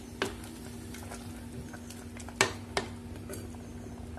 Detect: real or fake real